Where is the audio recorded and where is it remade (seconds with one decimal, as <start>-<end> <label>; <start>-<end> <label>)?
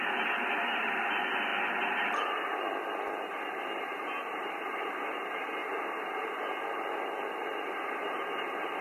0.0-1.5 remade; 1.5-2.1 recorded; 2.1-5.6 remade; 5.6-6.5 recorded; 6.5-8.8 remade